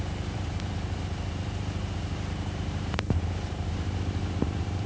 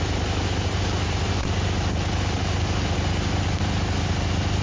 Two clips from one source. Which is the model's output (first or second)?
first